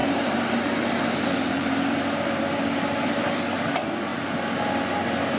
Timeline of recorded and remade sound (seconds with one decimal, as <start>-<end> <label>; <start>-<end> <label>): 0.0-3.2 remade; 3.2-5.4 recorded